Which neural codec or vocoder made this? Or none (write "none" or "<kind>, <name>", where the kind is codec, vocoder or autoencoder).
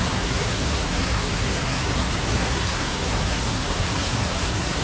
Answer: codec, SNAC